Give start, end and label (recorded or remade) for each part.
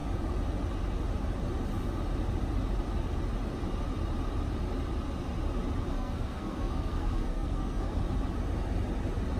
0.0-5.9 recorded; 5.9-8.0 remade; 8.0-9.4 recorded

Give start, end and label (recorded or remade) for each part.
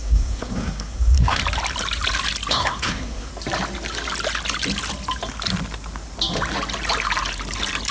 0.0-1.4 remade; 1.4-2.5 recorded; 2.5-3.3 remade; 3.3-7.9 recorded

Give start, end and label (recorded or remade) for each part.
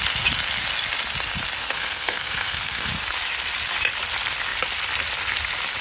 0.0-1.6 recorded; 1.6-2.9 remade; 2.9-5.8 recorded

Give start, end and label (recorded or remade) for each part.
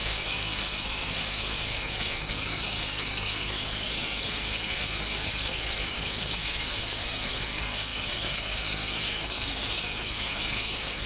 0.0-11.1 remade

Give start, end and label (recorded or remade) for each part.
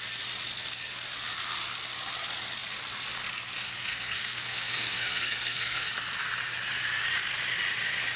0.0-3.9 recorded; 3.9-5.9 remade; 5.9-8.2 recorded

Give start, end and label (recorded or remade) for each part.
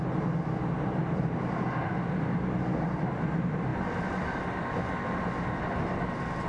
0.0-6.5 recorded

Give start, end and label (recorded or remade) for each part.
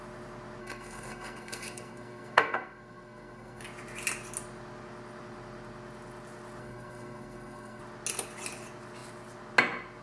0.0-0.6 recorded; 0.6-3.6 remade; 3.6-6.6 recorded; 6.6-7.8 remade; 7.8-10.0 recorded